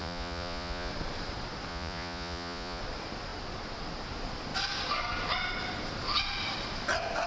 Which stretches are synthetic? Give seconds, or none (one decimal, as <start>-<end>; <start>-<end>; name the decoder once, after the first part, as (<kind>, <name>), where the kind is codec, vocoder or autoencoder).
0.0-0.9 (vocoder, Vocos); 1.7-2.8